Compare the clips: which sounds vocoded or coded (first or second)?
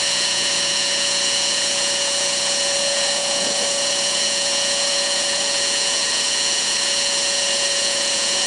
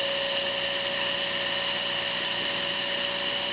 first